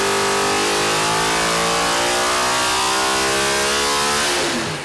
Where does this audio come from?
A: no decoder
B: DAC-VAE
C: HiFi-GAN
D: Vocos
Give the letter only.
A